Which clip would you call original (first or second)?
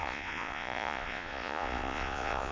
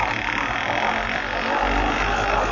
second